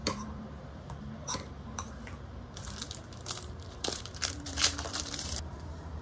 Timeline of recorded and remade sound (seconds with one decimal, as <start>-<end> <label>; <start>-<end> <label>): 0.0-6.0 remade